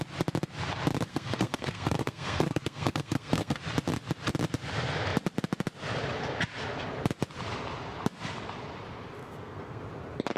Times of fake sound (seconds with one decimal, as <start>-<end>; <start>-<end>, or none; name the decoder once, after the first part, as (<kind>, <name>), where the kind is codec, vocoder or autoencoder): 1.1-3.6 (codec, SNAC); 9.2-9.8